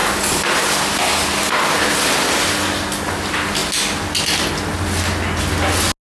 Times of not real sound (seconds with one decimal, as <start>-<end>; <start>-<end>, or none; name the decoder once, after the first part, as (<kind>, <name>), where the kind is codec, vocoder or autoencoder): none